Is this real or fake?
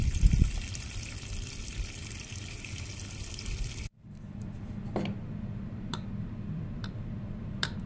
fake